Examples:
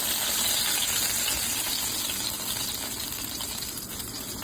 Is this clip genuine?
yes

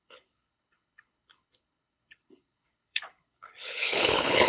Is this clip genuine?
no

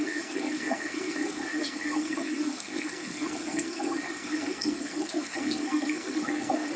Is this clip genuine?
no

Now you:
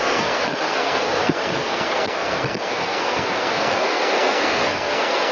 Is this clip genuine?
no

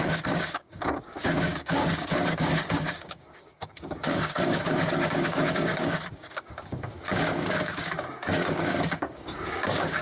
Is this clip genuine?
no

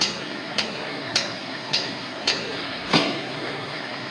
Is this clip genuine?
no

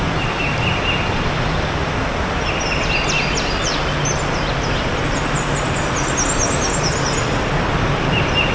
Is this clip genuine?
yes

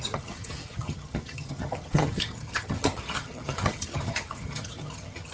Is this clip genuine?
no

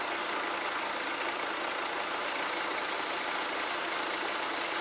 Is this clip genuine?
yes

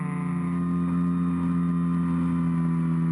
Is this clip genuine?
yes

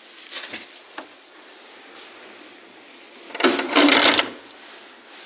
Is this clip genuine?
yes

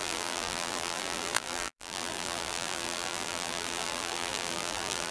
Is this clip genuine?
no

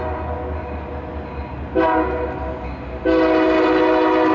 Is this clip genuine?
yes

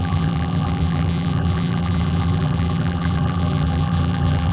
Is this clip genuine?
no